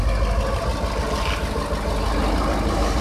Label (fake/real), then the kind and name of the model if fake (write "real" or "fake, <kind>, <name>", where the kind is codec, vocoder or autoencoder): real